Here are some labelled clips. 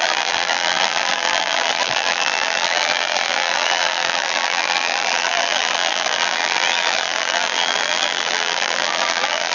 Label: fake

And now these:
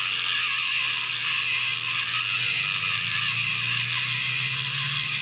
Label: real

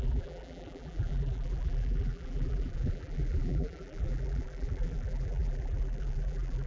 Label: fake